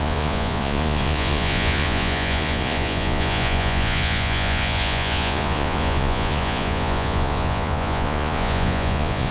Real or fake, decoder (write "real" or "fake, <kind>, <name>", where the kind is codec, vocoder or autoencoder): fake, vocoder, Vocos